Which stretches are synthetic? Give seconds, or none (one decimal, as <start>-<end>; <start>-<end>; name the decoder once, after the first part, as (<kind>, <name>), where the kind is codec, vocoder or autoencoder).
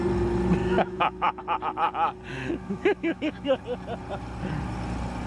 0.6-1.4 (autoencoder, DAC-VAE); 2.3-3.6